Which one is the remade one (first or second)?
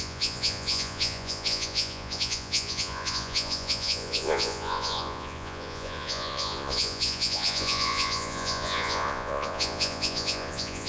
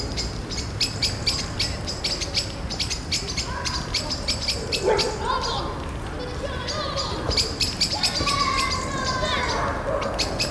first